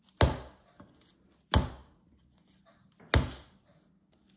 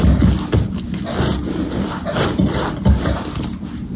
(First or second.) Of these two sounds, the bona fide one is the first